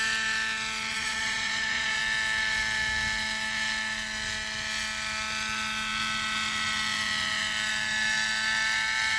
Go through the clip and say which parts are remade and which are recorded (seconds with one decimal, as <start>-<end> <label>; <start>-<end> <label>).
0.0-0.9 recorded; 0.9-2.0 remade; 2.0-9.2 recorded